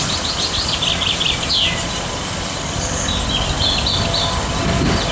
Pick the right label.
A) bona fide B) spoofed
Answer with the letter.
A